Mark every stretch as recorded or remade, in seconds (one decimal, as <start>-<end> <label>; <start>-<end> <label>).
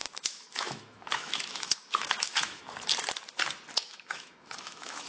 0.0-2.7 remade; 2.7-3.8 recorded; 3.8-5.1 remade